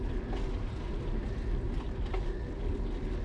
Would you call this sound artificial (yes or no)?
no